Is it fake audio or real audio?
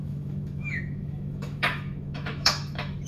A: fake